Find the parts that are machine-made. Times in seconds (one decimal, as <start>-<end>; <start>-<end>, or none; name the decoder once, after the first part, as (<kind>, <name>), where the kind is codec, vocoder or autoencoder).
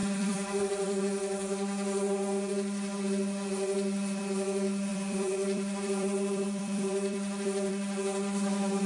0.0-1.0 (vocoder, BigVGAN v2); 4.9-7.7